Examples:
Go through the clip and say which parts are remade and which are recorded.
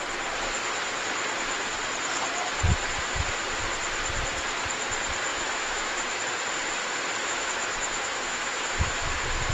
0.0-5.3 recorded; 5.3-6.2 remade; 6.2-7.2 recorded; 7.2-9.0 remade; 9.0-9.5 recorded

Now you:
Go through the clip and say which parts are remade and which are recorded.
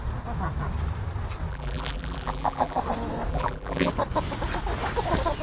0.0-1.5 recorded; 1.5-2.8 remade; 2.8-3.3 recorded; 3.3-3.9 remade; 3.9-5.4 recorded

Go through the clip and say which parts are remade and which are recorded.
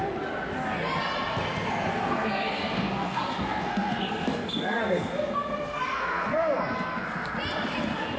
0.0-1.9 recorded; 1.9-6.6 remade; 6.6-8.2 recorded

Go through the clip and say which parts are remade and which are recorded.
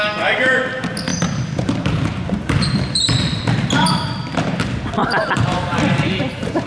0.0-1.1 recorded; 1.1-4.0 remade; 4.0-5.0 recorded; 5.0-6.2 remade; 6.2-6.7 recorded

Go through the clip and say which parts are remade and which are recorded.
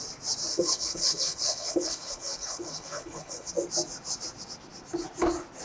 0.0-0.5 recorded; 0.5-3.5 remade; 3.5-5.6 recorded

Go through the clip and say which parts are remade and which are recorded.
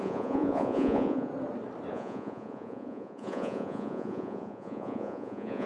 0.0-1.3 remade; 1.3-1.9 recorded; 1.9-5.7 remade